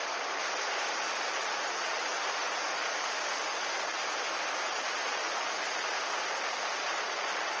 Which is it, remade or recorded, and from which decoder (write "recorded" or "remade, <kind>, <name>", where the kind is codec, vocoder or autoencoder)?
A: recorded